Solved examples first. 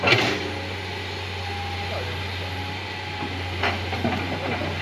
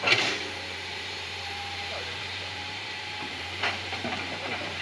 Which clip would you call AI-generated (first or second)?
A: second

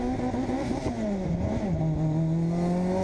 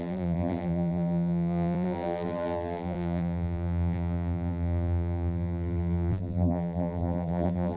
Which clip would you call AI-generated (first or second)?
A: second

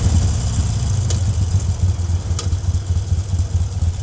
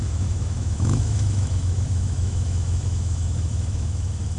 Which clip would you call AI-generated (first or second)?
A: second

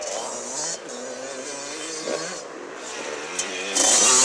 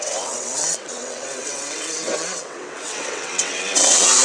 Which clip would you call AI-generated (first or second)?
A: second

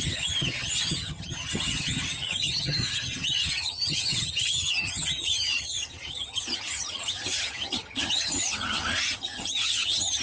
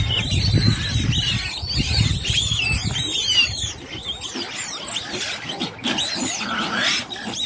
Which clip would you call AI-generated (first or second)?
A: first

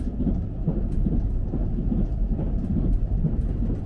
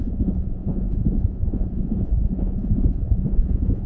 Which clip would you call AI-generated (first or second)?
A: second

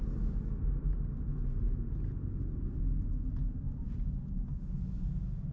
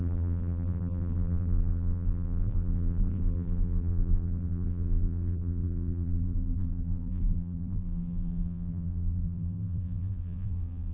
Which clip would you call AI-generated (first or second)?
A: second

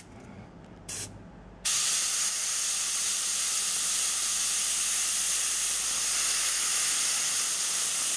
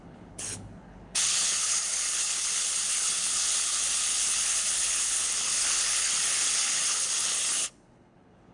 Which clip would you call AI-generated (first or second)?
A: second